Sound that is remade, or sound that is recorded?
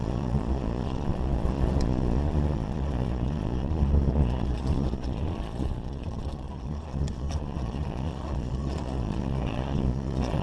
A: remade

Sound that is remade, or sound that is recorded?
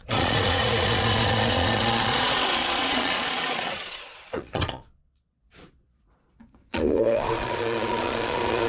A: remade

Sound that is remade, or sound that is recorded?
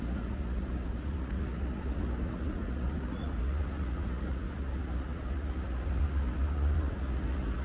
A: remade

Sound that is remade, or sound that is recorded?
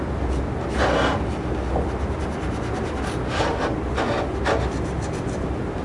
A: recorded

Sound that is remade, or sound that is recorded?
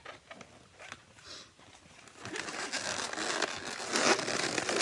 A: recorded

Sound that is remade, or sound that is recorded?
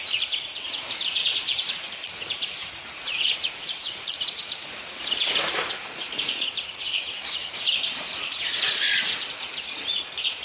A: remade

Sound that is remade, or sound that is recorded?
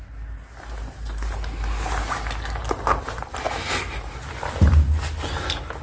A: recorded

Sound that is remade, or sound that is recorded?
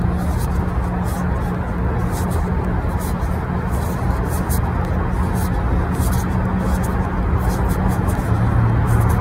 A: recorded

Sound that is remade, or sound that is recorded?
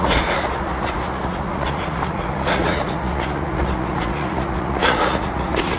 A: remade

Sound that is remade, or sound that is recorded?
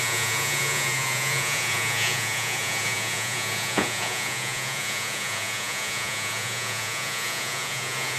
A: remade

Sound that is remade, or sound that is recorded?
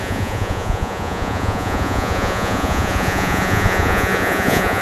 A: remade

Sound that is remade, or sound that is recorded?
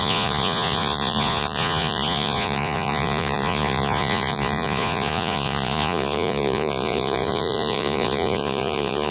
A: remade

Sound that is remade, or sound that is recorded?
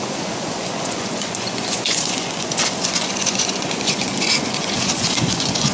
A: remade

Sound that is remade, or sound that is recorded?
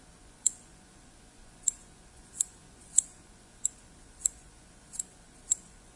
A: remade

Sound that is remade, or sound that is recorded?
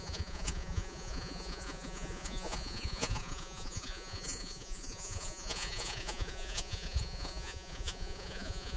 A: remade